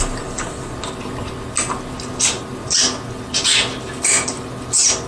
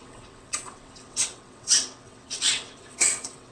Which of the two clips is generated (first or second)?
second